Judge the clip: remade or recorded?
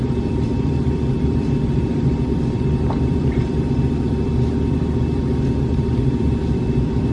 remade